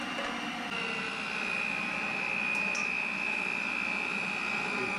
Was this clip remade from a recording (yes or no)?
no